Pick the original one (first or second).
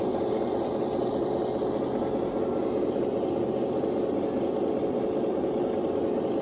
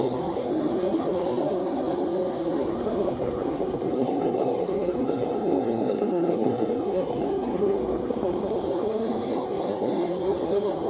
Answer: first